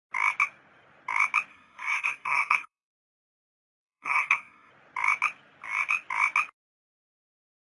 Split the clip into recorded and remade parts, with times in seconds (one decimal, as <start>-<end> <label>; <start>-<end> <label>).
0.0-1.5 recorded; 1.5-4.7 remade; 4.7-7.6 recorded